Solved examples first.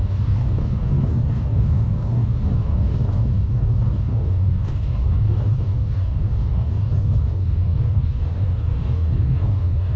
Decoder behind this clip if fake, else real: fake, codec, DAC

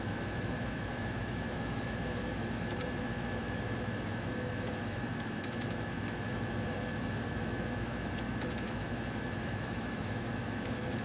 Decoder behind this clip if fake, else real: fake, autoencoder, DAC-VAE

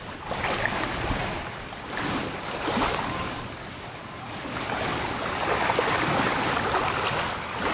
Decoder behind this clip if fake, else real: real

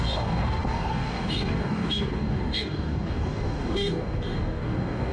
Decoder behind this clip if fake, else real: fake, codec, DAC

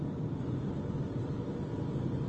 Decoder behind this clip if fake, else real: fake, vocoder, BigVGAN v2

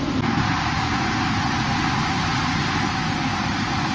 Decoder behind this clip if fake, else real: real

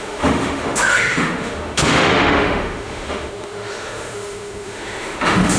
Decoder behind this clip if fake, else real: fake, autoencoder, DAC-VAE